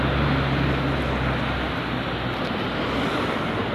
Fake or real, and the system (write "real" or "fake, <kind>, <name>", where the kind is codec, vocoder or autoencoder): real